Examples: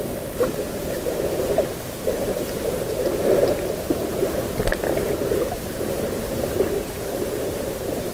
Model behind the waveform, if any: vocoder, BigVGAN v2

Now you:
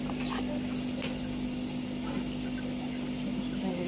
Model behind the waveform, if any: none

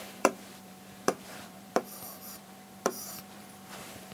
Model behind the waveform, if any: vocoder, BigVGAN v2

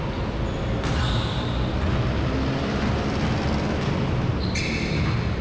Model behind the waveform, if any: none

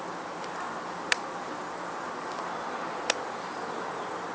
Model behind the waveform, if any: none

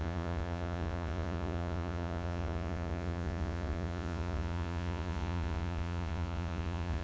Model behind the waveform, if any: vocoder, Vocos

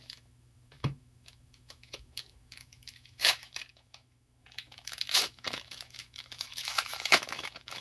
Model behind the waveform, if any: autoencoder, DAC-VAE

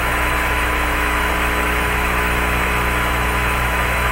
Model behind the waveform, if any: autoencoder, DAC-VAE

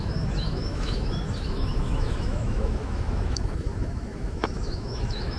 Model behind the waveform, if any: autoencoder, DAC-VAE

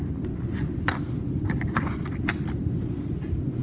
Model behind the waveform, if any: none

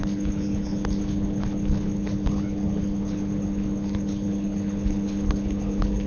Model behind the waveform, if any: codec, HILCodec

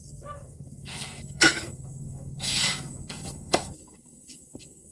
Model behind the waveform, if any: codec, SNAC